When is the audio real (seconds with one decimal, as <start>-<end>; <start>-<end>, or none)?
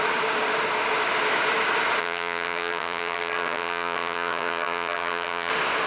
0.0-2.0; 5.5-5.9